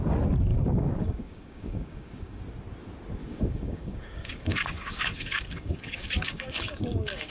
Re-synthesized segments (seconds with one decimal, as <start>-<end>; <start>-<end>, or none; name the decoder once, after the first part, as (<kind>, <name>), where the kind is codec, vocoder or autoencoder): 0.5-2.4 (codec, DAC); 3.2-7.3